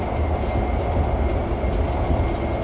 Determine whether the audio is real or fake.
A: real